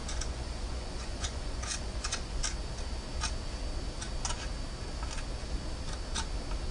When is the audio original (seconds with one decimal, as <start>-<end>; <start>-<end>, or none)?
2.4-6.7